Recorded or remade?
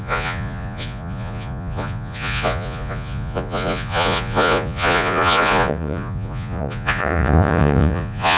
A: remade